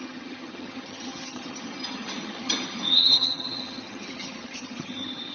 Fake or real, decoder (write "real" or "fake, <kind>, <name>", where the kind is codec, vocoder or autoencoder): fake, vocoder, HiFi-GAN